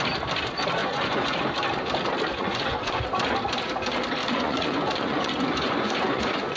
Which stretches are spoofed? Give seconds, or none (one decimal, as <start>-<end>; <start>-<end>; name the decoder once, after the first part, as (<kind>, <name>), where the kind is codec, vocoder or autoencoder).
0.8-1.4 (vocoder, Vocos); 2.3-3.0; 4.2-6.6